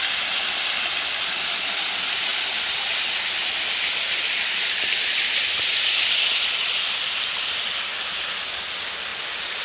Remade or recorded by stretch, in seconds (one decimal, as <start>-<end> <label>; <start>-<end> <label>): 0.0-9.6 recorded